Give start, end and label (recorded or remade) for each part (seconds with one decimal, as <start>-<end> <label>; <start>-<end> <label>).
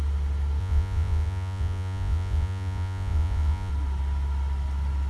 0.0-0.6 recorded; 0.6-3.7 remade; 3.7-5.1 recorded